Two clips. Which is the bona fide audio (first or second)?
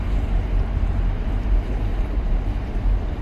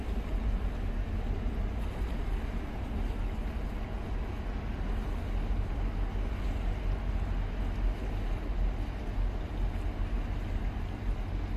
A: second